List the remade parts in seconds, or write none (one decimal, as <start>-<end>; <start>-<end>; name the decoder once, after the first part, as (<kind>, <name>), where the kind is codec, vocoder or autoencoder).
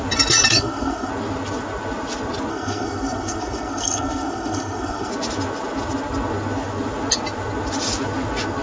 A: 0.5-1.1 (codec, SNAC); 2.5-5.1